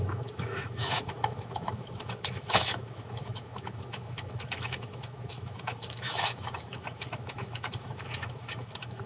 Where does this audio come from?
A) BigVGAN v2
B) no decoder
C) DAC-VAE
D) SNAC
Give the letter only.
C